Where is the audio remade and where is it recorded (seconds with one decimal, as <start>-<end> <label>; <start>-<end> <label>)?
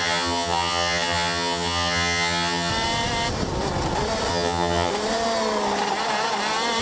0.0-2.7 remade; 2.7-4.3 recorded; 4.3-4.9 remade; 4.9-6.8 recorded